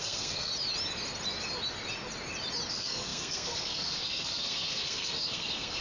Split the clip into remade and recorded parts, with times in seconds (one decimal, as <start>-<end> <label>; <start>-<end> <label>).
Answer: 0.0-0.5 remade; 0.5-2.7 recorded; 2.7-5.8 remade

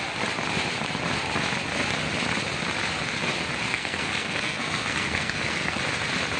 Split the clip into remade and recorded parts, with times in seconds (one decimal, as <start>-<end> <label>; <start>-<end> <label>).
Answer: 0.0-3.7 recorded; 3.7-5.8 remade; 5.8-6.4 recorded

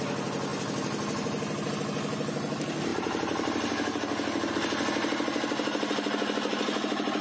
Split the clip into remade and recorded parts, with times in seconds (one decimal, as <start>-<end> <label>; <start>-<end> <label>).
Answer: 0.0-7.2 recorded

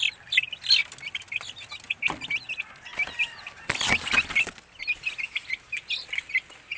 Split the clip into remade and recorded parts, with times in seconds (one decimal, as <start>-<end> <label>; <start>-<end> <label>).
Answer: 0.0-6.8 recorded

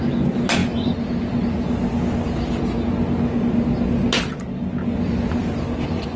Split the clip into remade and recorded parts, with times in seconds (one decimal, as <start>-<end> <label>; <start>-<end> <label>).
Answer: 0.0-6.2 recorded

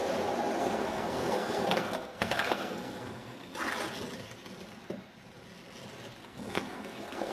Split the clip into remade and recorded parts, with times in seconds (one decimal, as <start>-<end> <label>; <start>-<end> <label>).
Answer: 0.0-0.6 recorded; 0.6-3.5 remade; 3.5-6.2 recorded; 6.2-7.3 remade